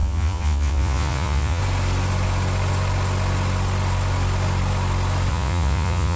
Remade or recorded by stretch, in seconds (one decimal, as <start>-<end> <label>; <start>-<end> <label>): 0.0-1.6 remade; 1.6-5.3 recorded; 5.3-6.2 remade